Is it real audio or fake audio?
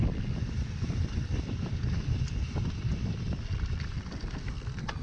fake